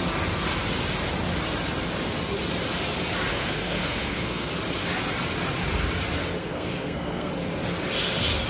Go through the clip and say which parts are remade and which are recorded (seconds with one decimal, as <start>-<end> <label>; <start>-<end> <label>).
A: 0.0-3.3 recorded; 3.3-4.5 remade; 4.5-6.4 recorded; 6.4-7.3 remade; 7.3-8.5 recorded